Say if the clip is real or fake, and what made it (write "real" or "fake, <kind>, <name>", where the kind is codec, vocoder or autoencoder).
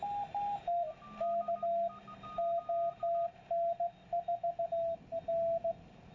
real